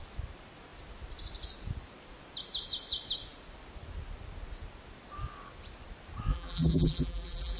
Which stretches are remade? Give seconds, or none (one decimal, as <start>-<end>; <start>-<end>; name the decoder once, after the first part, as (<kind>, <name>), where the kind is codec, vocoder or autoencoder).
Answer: 6.3-7.6 (vocoder, BigVGAN v2)